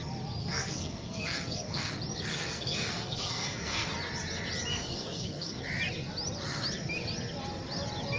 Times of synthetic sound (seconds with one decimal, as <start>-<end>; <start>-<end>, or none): 0.4-1.9; 2.3-3.9; 4.7-5.6